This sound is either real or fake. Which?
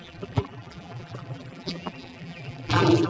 fake